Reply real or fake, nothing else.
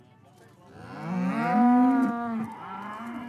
real